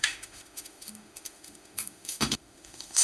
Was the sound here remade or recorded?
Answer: remade